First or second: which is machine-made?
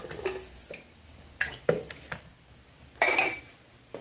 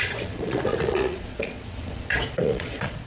second